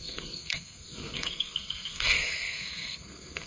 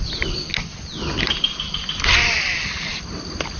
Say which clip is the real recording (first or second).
second